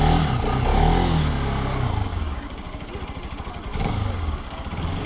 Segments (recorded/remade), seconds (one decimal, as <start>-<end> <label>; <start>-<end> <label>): 0.0-0.7 recorded; 0.7-1.3 remade; 1.3-2.1 recorded; 2.1-2.9 remade; 2.9-3.7 recorded; 3.7-5.1 remade